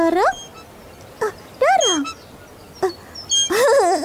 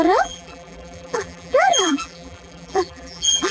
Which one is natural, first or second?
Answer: first